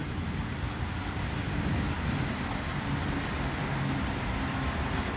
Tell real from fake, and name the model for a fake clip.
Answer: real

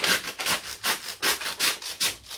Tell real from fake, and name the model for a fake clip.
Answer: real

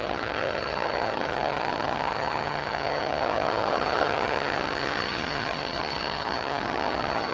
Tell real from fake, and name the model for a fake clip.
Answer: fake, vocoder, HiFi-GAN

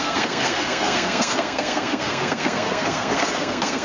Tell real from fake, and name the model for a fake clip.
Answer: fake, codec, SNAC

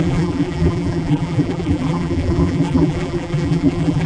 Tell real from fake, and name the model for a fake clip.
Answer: fake, vocoder, BigVGAN v2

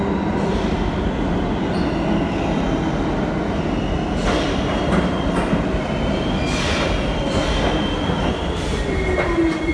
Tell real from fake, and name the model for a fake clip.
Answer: real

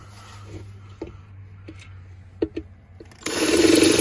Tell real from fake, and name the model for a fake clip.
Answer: real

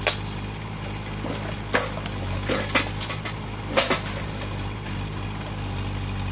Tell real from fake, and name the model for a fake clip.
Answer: real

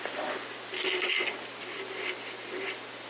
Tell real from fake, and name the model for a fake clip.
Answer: real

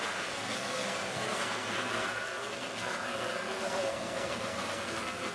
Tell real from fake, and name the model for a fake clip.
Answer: fake, codec, SNAC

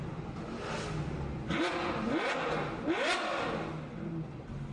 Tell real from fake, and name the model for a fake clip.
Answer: real